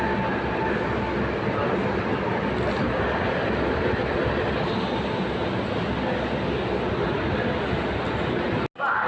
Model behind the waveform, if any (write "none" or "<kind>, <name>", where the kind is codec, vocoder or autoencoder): none